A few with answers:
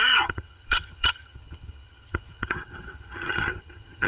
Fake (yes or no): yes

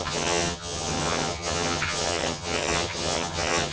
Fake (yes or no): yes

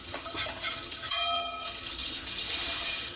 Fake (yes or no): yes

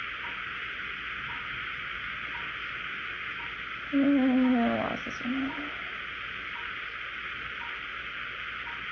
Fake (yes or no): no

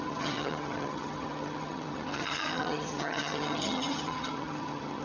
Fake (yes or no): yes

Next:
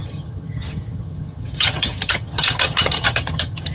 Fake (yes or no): yes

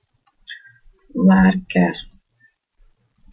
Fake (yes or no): no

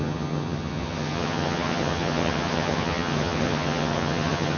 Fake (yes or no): yes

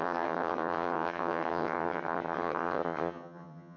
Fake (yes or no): yes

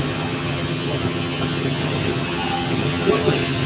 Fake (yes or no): yes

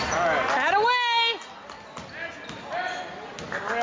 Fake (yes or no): no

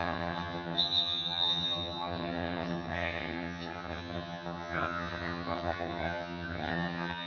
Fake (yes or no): yes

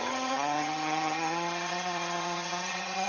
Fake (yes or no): yes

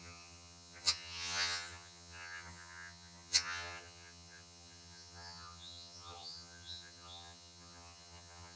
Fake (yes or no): yes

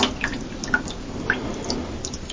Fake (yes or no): no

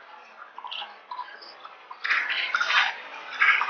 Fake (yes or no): no